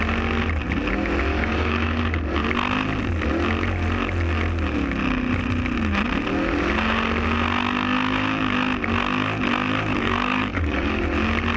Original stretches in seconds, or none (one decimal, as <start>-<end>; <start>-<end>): 0.0-1.3; 2.0-9.9; 11.0-11.6